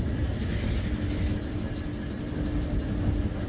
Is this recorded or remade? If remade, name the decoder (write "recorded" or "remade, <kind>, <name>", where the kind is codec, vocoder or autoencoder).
recorded